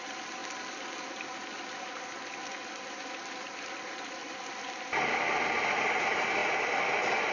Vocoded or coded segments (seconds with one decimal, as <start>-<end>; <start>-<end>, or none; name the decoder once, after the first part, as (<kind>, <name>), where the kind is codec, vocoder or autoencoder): 0.0-0.4 (vocoder, BigVGAN v2); 4.8-6.4

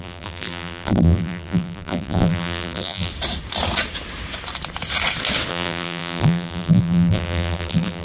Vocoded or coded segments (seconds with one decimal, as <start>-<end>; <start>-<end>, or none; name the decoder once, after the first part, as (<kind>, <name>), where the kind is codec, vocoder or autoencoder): 0.0-3.1 (vocoder, BigVGAN v2); 5.5-8.0

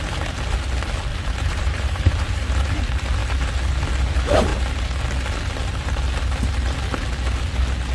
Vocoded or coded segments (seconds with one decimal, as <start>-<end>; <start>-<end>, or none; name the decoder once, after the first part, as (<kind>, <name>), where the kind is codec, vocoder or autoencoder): 1.1-2.8 (vocoder, BigVGAN v2)